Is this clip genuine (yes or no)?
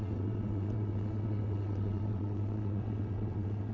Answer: no